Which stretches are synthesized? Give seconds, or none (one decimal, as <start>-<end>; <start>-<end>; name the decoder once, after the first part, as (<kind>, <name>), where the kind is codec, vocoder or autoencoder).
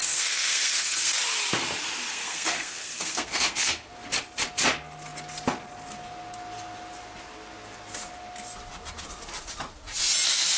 0.0-1.1 (codec, SNAC); 2.1-3.9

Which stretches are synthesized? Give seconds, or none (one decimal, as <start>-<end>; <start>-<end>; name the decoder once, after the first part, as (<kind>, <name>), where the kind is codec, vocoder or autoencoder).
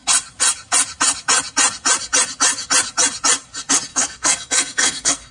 3.9-5.3 (codec, SNAC)